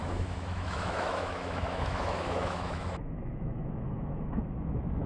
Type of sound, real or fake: fake